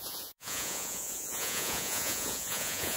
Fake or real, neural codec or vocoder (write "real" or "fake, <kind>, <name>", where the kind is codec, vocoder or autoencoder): fake, vocoder, Vocos